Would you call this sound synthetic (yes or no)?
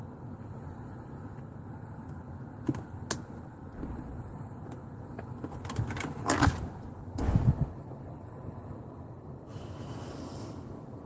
no